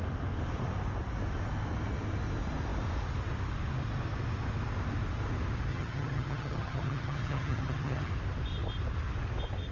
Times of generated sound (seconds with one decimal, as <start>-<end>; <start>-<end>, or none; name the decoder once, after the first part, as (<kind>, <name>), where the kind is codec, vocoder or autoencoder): 5.7-8.1 (vocoder, HiFi-GAN)